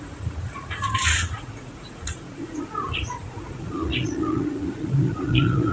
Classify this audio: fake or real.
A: fake